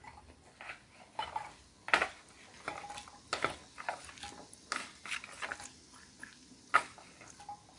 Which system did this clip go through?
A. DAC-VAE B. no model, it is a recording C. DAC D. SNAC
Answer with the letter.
B